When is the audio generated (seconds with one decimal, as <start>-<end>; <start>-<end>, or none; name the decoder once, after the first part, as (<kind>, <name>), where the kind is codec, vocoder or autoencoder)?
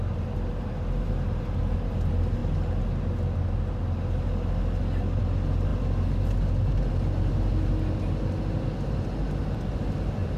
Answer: none